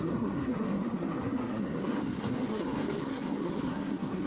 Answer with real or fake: fake